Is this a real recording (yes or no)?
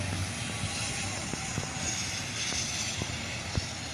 yes